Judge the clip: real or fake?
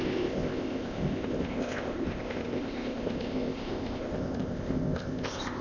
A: fake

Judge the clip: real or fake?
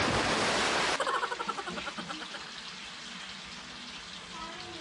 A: real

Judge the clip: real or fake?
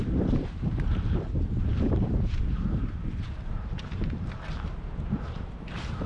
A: fake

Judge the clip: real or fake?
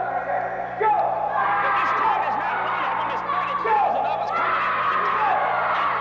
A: real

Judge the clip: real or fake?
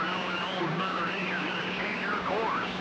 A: fake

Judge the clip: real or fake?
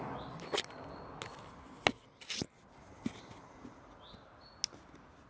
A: real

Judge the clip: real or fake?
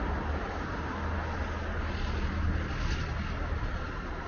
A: real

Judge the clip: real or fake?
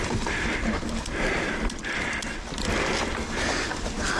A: fake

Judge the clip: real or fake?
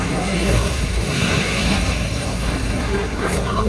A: fake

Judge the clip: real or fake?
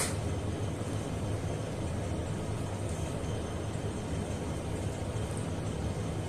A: real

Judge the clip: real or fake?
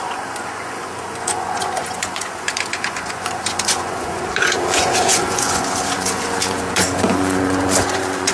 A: fake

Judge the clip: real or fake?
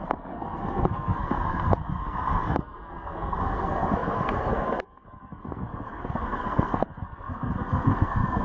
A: fake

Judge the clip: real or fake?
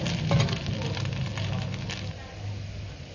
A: real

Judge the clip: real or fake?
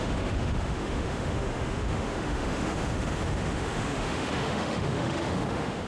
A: fake